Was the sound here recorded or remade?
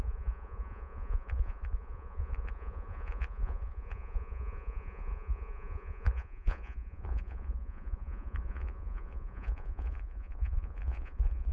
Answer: remade